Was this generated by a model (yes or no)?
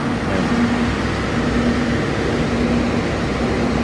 no